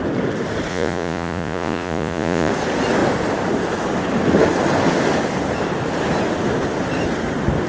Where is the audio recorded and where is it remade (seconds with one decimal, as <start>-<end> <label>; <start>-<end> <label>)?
0.0-0.7 recorded; 0.7-2.5 remade; 2.5-7.7 recorded